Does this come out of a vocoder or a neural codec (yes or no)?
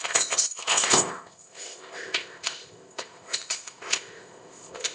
yes